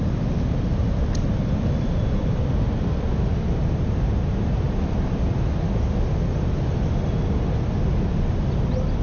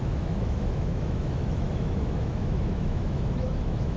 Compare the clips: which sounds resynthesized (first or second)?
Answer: second